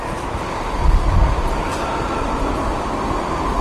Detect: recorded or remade recorded